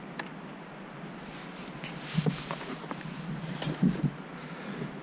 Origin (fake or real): real